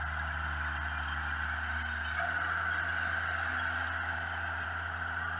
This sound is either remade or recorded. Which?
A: recorded